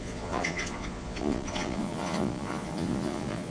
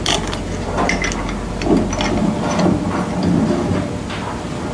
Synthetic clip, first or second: first